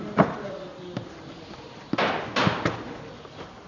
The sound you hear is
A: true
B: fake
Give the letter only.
A